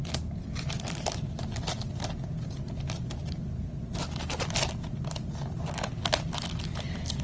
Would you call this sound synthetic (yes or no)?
no